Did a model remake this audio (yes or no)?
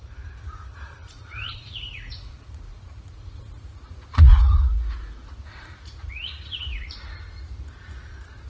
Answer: yes